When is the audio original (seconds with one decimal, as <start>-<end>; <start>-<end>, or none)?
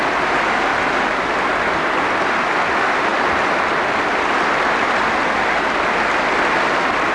0.0-7.1